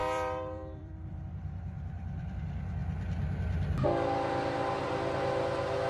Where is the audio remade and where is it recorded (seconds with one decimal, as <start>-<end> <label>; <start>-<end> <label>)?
0.0-2.4 remade; 2.4-5.9 recorded

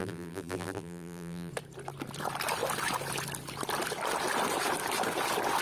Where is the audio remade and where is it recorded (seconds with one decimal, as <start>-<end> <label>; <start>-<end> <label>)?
0.0-1.5 remade; 1.5-5.6 recorded

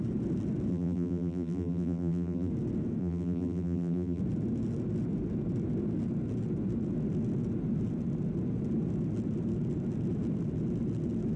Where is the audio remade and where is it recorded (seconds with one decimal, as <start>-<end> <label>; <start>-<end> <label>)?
0.0-0.7 recorded; 0.7-2.5 remade; 2.5-3.0 recorded; 3.0-4.2 remade; 4.2-11.4 recorded

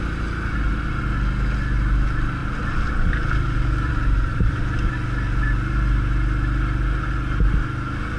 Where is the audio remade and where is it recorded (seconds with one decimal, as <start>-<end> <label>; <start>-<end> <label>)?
0.0-2.4 recorded; 2.4-4.9 remade; 4.9-8.2 recorded

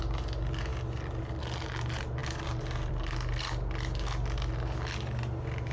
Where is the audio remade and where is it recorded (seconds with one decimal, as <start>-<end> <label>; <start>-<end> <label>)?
0.0-5.7 recorded

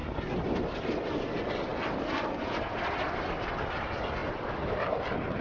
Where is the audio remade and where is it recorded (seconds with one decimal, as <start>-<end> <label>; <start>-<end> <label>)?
0.0-1.1 remade; 1.1-5.4 recorded

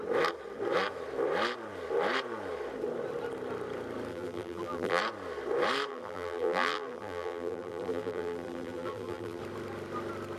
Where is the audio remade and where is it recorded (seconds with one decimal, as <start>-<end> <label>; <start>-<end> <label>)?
0.0-4.1 recorded; 4.1-5.0 remade; 5.0-5.9 recorded; 5.9-9.4 remade; 9.4-10.4 recorded